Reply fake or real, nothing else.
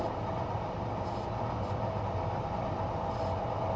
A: real